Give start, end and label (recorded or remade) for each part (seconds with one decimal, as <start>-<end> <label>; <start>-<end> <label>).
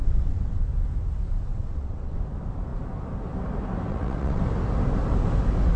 0.0-0.6 remade; 0.6-1.5 recorded; 1.5-2.2 remade; 2.2-3.9 recorded; 3.9-4.4 remade; 4.4-5.8 recorded